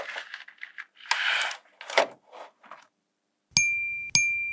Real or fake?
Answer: real